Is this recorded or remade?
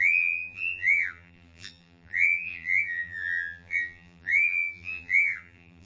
remade